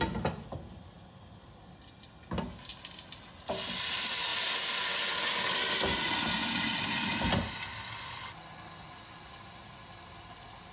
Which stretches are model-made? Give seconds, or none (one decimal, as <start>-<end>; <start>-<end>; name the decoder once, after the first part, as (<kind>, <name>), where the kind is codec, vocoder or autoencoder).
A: 2.7-3.5 (vocoder, BigVGAN v2)